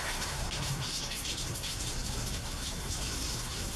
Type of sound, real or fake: fake